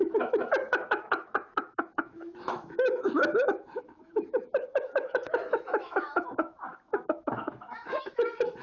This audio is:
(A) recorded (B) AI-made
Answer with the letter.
B